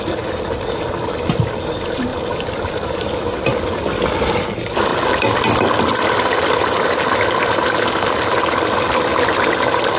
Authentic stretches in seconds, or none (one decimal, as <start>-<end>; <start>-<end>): 0.0-10.0